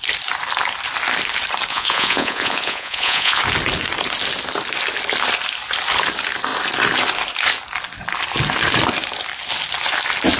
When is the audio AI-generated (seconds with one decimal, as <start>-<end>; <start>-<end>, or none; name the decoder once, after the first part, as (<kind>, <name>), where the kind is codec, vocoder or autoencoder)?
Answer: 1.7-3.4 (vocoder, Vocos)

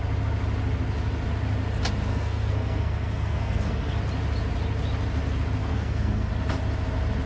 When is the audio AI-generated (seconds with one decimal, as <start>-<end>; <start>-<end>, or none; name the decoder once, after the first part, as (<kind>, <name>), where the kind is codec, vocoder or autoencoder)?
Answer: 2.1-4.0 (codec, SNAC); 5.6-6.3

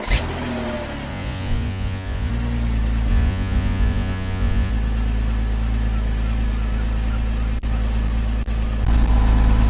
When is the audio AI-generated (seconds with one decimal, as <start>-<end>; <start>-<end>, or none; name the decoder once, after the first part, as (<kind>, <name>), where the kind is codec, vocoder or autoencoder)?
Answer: 1.1-2.3 (vocoder, Vocos); 3.1-4.7